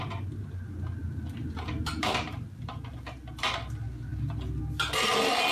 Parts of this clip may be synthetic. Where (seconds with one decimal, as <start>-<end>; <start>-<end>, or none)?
none